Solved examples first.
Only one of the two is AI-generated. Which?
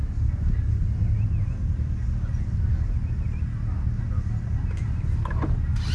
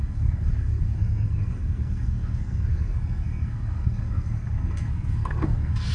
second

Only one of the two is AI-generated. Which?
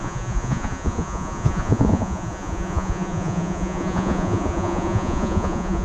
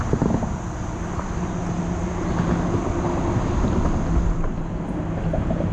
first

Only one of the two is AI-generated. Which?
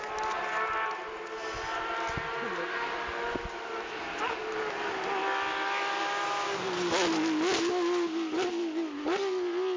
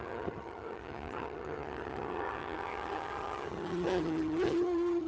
second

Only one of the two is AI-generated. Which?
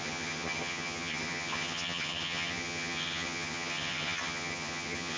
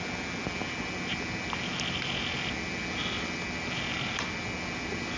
first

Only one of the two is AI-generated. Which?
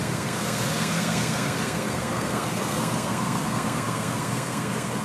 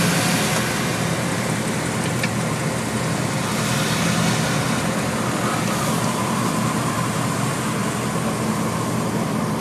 first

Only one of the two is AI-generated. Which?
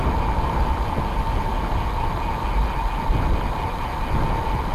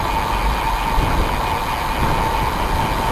first